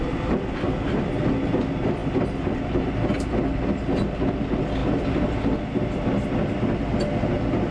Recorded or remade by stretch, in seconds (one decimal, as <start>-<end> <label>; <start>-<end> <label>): 0.0-7.7 recorded